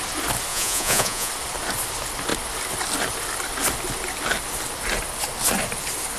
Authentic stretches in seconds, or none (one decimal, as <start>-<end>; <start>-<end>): 0.0-0.5; 1.3-6.2